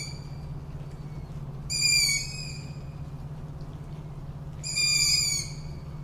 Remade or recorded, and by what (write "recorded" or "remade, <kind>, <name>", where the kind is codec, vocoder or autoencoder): recorded